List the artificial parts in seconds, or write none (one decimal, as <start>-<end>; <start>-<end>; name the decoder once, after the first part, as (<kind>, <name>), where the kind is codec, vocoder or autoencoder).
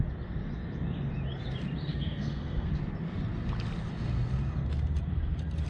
1.9-2.7 (codec, SNAC)